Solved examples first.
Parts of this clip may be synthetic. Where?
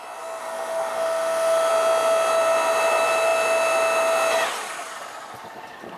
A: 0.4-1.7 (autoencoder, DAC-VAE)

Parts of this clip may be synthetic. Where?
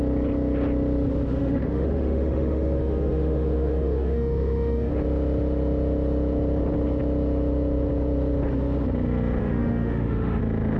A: 1.4-4.9 (autoencoder, DAC-VAE); 9.4-10.4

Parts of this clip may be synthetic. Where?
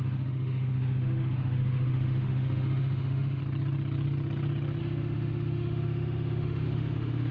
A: 0.0-3.4 (autoencoder, DAC-VAE); 4.8-7.3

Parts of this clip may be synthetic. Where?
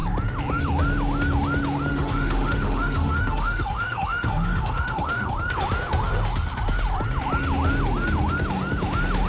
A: 1.9-5.3 (autoencoder, DAC-VAE)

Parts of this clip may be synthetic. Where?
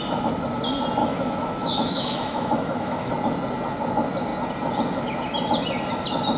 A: 1.0-3.1 (autoencoder, DAC-VAE)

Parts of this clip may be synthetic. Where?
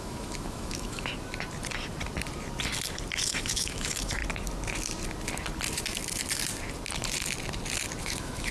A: 0.0-1.1 (autoencoder, DAC-VAE); 3.3-4.2; 8.0-8.5